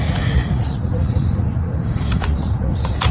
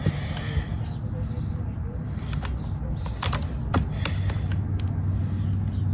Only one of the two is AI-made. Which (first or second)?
first